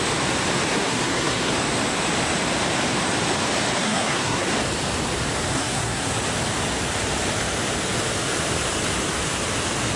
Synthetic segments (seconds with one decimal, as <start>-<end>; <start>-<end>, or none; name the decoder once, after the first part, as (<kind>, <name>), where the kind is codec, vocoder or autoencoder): 0.7-1.5 (codec, SNAC); 3.8-4.5; 5.5-6.1